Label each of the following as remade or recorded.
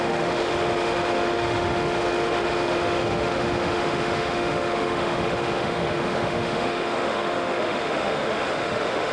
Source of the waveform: remade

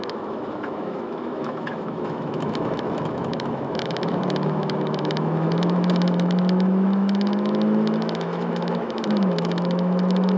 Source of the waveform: remade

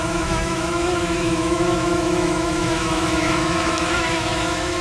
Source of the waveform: remade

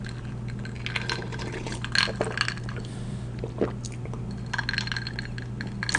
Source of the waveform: recorded